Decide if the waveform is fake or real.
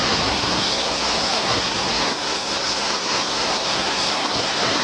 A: fake